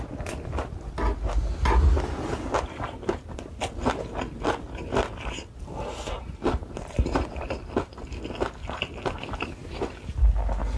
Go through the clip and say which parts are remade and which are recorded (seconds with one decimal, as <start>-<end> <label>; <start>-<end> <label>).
0.0-10.8 recorded